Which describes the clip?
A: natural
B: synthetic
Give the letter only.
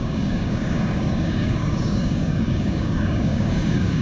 B